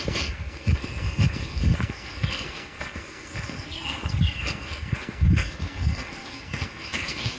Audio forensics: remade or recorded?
remade